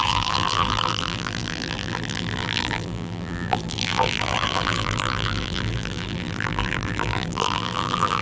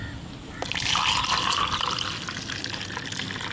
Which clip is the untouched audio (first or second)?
second